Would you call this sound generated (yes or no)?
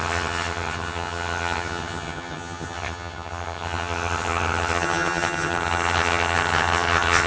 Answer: yes